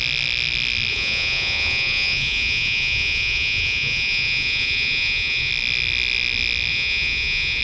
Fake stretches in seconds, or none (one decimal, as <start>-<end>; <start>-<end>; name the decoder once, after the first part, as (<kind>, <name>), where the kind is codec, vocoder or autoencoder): 0.9-5.5 (vocoder, Vocos); 6.7-7.6